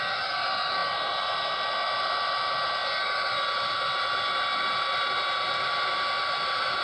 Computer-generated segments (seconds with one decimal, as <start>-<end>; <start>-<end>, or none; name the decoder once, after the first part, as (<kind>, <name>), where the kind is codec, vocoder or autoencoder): none